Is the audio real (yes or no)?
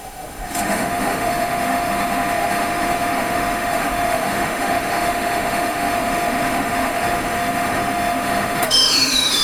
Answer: no